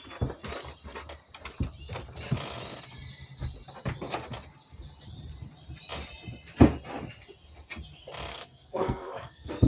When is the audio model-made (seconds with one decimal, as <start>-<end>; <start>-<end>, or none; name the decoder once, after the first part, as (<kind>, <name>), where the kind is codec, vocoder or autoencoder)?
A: 8.3-9.7 (codec, SNAC)